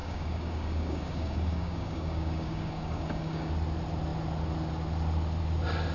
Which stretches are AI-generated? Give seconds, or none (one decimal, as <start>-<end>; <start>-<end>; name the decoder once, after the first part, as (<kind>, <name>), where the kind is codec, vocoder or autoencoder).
0.0-3.5 (codec, DAC)